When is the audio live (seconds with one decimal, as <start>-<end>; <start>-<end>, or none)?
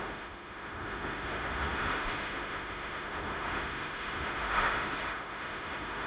none